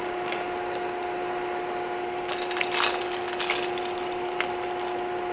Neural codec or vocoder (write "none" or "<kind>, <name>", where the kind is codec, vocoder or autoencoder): none